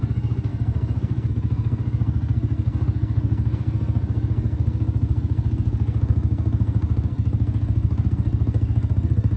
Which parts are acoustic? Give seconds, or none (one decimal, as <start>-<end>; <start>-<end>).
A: none